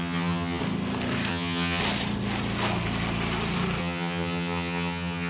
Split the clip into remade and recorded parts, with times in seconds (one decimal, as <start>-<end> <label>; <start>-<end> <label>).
0.0-0.6 remade; 0.6-1.3 recorded; 1.3-1.8 remade; 1.8-3.8 recorded; 3.8-5.3 remade

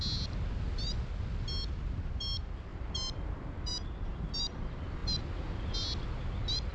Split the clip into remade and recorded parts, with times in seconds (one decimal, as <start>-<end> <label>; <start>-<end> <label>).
0.0-6.7 recorded

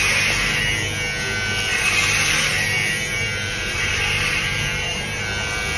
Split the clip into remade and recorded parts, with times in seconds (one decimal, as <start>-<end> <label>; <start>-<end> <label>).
0.0-1.7 recorded; 1.7-5.2 remade; 5.2-5.8 recorded